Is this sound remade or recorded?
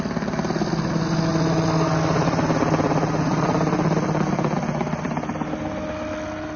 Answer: recorded